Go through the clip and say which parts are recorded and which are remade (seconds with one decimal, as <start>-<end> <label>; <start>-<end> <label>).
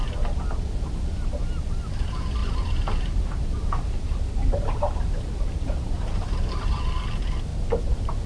0.0-2.4 recorded; 2.4-6.8 remade; 6.8-7.5 recorded; 7.5-8.3 remade